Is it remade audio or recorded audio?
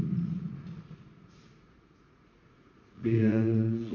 remade